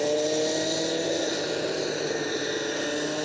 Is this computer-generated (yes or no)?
no